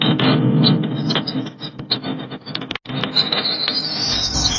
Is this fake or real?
real